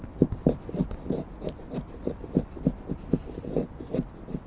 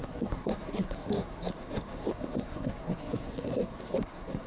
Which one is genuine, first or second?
first